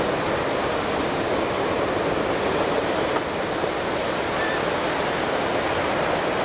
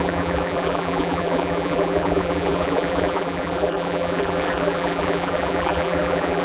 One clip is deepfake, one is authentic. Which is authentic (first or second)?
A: first